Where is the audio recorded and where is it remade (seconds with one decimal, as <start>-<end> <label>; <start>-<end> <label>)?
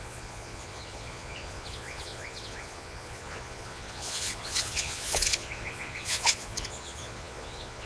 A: 0.0-7.9 remade